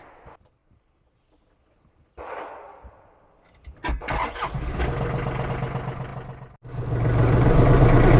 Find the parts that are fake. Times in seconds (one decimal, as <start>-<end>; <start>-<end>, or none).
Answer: none